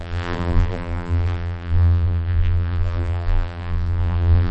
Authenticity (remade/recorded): remade